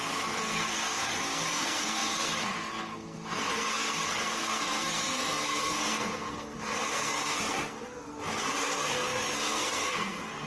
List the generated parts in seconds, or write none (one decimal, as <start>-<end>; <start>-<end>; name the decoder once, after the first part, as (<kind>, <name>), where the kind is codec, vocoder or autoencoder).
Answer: 0.0-10.5 (codec, SNAC)